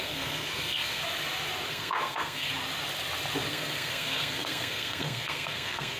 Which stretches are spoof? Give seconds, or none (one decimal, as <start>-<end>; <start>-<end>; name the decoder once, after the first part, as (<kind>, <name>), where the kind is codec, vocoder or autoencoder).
0.0-1.0 (codec, SNAC); 1.7-2.5; 3.5-6.0